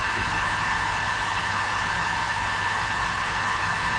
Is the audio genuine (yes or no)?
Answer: no